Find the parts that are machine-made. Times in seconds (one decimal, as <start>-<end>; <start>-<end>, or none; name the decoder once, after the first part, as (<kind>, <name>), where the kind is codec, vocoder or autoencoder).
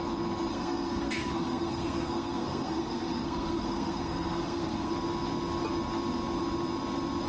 0.5-4.9 (codec, SNAC)